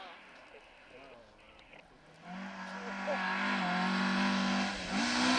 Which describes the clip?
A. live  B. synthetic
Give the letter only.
A